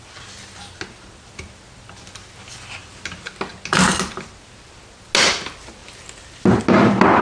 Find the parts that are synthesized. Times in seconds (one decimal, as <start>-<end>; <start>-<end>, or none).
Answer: none